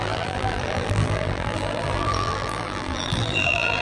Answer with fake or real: fake